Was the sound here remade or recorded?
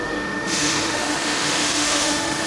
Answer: remade